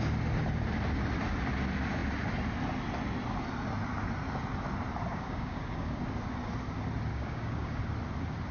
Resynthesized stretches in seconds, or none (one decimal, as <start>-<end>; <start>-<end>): 5.1-6.0; 7.1-7.8